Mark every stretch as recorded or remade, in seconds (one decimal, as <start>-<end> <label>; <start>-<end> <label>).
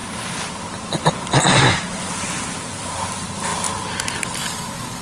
0.0-3.0 remade; 3.0-5.0 recorded